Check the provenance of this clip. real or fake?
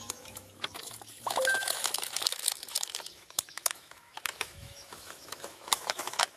fake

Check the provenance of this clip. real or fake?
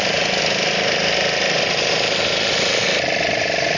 real